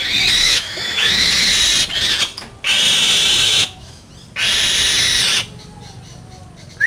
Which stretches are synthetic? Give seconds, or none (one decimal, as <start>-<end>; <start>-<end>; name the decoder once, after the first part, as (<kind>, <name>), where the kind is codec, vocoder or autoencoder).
0.4-1.3 (autoencoder, DAC-VAE); 3.4-4.1